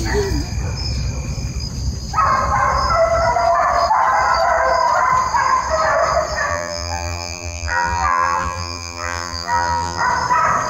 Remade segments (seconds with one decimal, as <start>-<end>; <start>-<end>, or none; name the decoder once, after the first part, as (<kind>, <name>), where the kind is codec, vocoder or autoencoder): 6.5-10.0 (vocoder, BigVGAN v2)